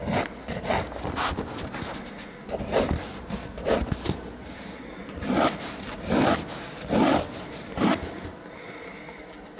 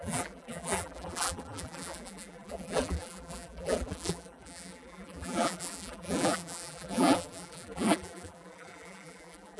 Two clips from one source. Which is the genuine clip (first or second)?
first